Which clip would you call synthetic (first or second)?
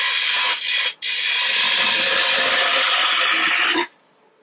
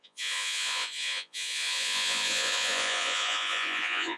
second